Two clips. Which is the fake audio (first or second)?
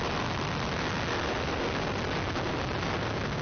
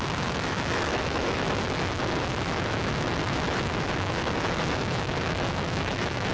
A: second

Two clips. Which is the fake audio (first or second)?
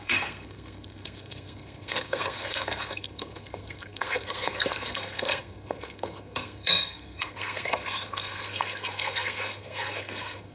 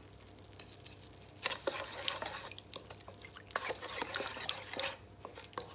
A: first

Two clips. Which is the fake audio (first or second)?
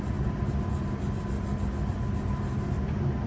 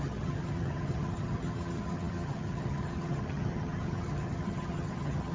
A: second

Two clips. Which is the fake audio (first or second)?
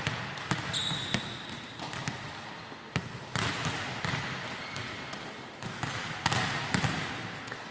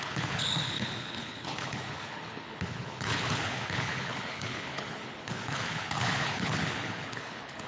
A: second